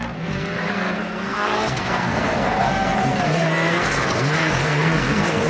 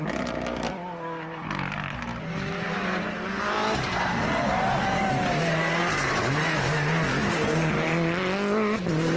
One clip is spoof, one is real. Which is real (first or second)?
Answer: second